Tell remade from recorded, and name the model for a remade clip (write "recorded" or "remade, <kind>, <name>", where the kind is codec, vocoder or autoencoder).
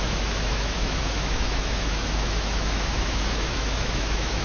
remade, autoencoder, DAC-VAE